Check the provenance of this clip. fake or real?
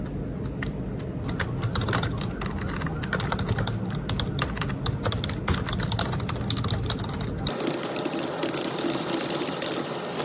real